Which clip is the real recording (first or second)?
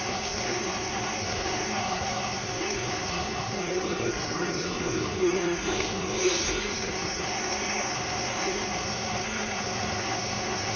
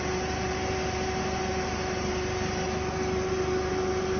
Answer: second